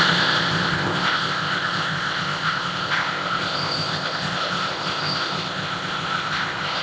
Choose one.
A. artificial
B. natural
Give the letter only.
A